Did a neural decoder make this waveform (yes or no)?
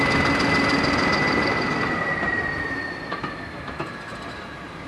no